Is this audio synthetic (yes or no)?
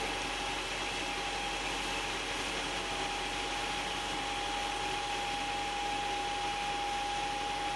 no